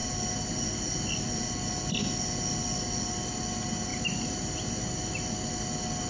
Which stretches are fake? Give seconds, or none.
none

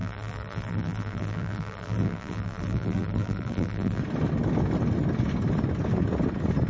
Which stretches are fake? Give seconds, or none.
0.0-4.0 (vocoder, BigVGAN v2)

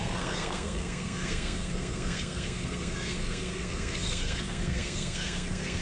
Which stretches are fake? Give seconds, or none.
0.0-5.8 (codec, SNAC)